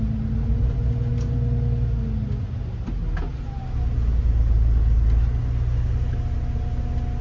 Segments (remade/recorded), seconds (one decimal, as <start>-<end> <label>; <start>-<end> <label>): 0.0-7.2 recorded